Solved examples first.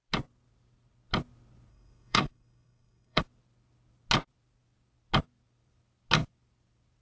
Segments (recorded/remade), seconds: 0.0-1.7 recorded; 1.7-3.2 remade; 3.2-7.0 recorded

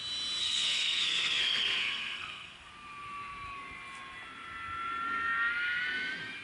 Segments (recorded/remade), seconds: 0.0-0.4 recorded; 0.4-2.7 remade; 2.7-6.4 recorded

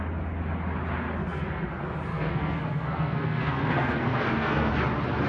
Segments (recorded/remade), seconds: 0.0-1.2 recorded; 1.2-1.7 remade; 1.7-2.1 recorded; 2.1-4.7 remade; 4.7-5.3 recorded